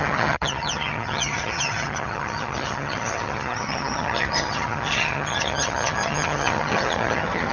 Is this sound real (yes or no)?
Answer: no